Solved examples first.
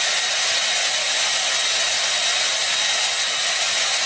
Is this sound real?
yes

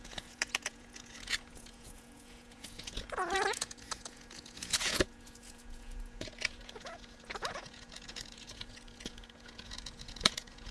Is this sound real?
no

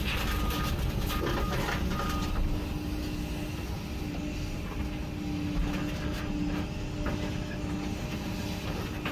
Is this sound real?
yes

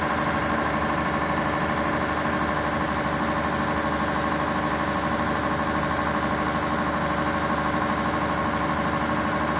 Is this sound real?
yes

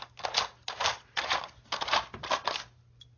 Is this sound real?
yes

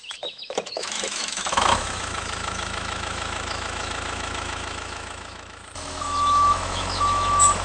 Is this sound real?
no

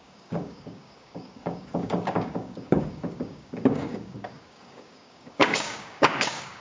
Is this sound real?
no